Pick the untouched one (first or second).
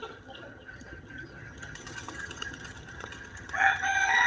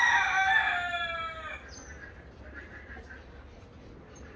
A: second